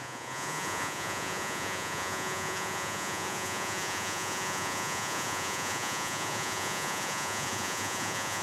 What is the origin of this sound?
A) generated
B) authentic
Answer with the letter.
A